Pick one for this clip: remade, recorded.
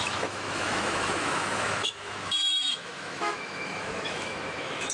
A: remade